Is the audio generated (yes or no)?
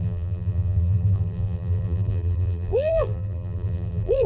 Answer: yes